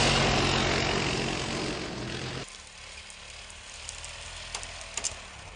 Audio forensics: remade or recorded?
recorded